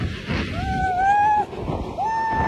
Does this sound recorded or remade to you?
recorded